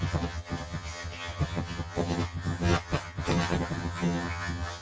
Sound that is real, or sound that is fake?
fake